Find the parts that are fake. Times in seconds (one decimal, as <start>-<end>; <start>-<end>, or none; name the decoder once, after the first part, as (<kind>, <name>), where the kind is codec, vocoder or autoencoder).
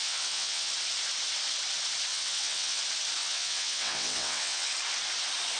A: 0.0-0.7 (vocoder, WaveNeXt); 2.1-2.8; 3.2-4.7